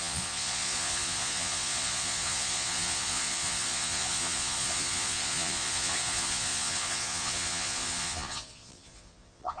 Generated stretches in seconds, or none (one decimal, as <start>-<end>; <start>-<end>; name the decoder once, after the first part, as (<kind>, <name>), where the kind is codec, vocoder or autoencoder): 0.0-9.6 (vocoder, Vocos)